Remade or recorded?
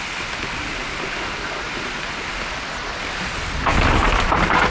recorded